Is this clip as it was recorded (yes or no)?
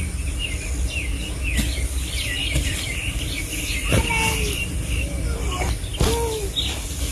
yes